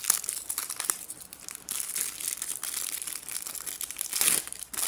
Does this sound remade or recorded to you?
recorded